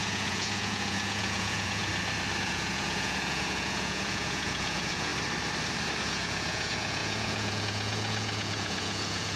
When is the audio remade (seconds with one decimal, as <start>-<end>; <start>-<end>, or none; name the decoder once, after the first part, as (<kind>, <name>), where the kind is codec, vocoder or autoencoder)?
0.0-1.9 (vocoder, Vocos); 2.4-5.1; 6.0-9.4